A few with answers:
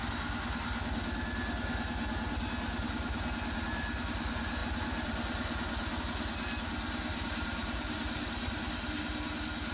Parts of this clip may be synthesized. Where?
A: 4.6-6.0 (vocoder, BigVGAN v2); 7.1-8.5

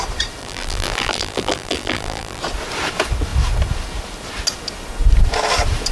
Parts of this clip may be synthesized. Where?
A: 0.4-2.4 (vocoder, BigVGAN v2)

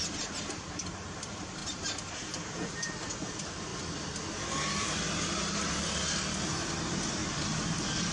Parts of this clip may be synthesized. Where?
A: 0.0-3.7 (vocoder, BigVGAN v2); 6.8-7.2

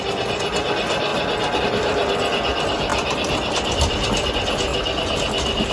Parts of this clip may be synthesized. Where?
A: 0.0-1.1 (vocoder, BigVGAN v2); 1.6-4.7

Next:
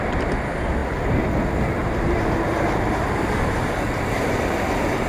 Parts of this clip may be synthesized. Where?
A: 1.8-5.1 (vocoder, BigVGAN v2)

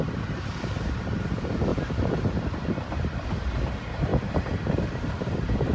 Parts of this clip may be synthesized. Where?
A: 0.0-5.7 (vocoder, BigVGAN v2)